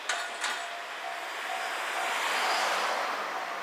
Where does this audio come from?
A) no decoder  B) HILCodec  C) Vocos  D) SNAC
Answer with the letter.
A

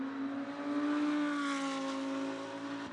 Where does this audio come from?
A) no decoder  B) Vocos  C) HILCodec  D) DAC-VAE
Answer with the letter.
A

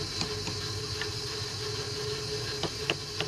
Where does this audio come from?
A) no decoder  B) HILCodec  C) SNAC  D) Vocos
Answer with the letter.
A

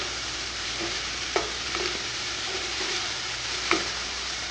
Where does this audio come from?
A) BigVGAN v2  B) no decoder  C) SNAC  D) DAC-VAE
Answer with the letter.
A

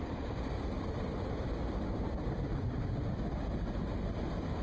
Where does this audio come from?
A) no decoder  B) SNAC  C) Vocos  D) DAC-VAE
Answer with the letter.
A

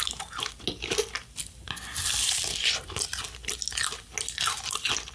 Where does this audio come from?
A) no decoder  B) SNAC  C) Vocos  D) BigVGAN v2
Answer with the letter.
A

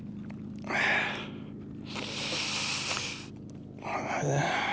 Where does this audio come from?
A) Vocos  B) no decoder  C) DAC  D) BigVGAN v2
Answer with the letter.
B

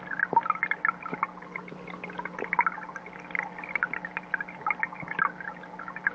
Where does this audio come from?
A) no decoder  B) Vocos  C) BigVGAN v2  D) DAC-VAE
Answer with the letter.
A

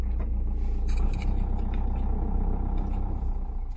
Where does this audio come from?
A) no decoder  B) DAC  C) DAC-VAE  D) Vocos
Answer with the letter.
A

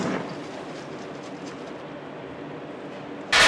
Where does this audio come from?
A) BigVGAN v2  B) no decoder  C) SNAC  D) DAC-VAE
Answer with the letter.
B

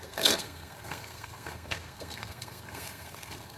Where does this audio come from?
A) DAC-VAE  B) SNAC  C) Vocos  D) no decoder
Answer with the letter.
B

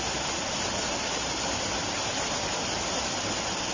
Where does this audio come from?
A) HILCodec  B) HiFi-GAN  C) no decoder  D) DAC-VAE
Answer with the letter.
C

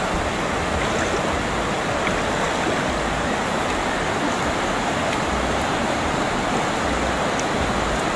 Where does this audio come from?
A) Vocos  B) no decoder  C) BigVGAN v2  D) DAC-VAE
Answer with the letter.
B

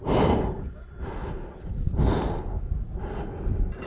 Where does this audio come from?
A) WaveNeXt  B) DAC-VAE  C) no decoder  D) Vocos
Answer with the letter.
C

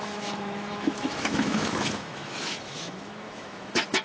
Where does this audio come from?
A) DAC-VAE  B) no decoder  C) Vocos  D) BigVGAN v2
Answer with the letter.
A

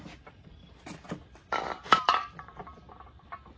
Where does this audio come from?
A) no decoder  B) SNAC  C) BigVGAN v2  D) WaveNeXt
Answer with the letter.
A